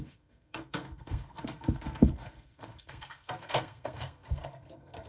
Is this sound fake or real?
fake